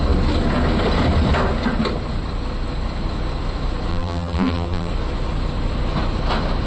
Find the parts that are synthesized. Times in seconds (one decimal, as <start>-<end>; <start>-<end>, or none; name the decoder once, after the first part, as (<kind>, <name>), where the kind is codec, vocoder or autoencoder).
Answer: 3.9-4.9 (vocoder, BigVGAN v2)